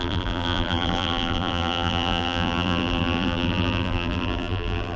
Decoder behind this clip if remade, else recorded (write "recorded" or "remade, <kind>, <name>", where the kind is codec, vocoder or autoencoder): remade, vocoder, BigVGAN v2